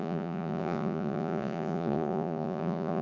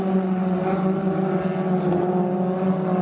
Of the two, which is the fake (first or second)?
first